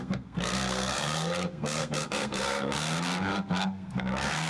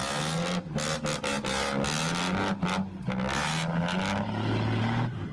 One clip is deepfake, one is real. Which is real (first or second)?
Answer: second